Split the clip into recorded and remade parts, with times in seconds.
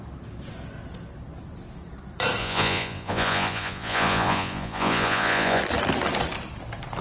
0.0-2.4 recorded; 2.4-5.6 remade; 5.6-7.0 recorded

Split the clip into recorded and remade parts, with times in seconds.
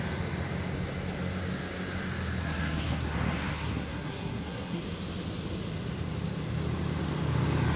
0.0-2.4 recorded; 2.4-4.8 remade; 4.8-7.8 recorded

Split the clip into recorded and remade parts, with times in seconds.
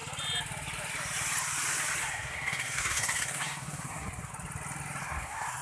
0.0-2.0 recorded; 2.0-4.3 remade; 4.3-5.0 recorded; 5.0-5.6 remade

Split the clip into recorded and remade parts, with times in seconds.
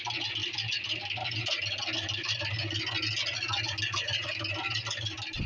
0.0-5.5 recorded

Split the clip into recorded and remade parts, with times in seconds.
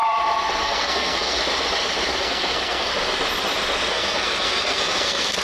0.0-0.6 recorded; 0.6-1.4 remade; 1.4-2.2 recorded; 2.2-2.9 remade; 2.9-3.9 recorded; 3.9-5.4 remade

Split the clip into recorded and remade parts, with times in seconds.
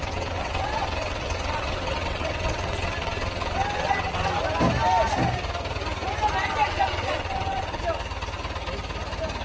0.0-4.4 remade; 4.4-6.4 recorded; 6.4-7.8 remade; 7.8-9.4 recorded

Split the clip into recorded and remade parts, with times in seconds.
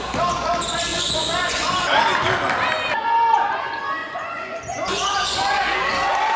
0.0-0.9 recorded; 0.9-2.0 remade; 2.0-4.0 recorded; 4.0-5.9 remade; 5.9-6.4 recorded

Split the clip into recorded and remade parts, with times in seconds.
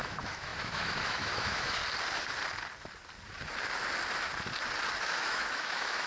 0.0-1.8 remade; 1.8-5.0 recorded; 5.0-6.1 remade